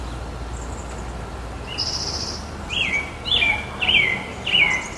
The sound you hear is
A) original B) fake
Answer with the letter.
A